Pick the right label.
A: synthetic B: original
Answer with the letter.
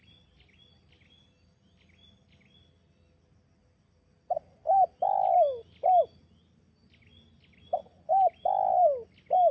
B